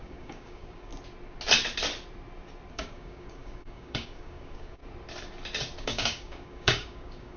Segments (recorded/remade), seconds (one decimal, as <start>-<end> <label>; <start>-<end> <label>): 0.0-0.9 remade; 0.9-2.7 recorded; 2.7-4.8 remade; 4.8-5.8 recorded; 5.8-7.4 remade